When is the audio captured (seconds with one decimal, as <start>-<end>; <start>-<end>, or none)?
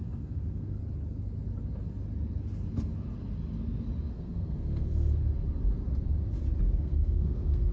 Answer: 0.8-4.1; 5.2-6.6